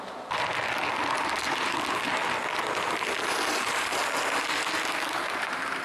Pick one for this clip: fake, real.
real